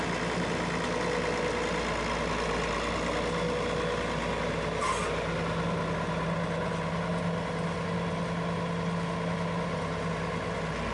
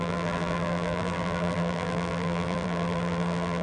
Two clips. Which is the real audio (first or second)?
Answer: first